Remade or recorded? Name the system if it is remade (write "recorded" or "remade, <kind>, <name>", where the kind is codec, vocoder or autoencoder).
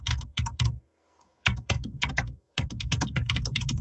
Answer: remade, codec, SNAC